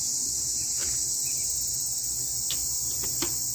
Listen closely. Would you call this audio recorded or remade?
recorded